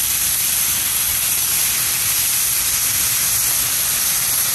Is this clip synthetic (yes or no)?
no